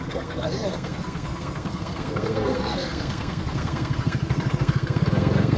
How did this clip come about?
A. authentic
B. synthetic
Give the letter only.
B